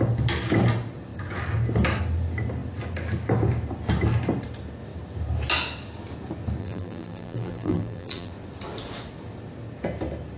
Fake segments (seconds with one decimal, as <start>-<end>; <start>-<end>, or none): 6.6-8.3